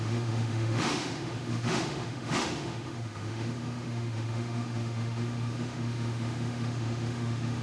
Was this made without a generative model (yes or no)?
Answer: no